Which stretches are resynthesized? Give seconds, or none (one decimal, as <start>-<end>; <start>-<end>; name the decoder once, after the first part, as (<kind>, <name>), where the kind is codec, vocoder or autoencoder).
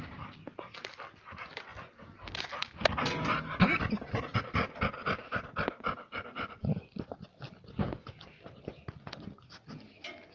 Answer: none